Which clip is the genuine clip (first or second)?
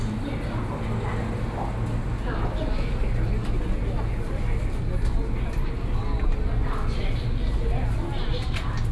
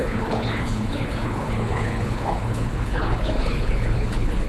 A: first